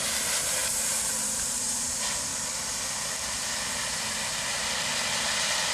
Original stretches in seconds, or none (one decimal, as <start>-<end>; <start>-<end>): 2.3-5.7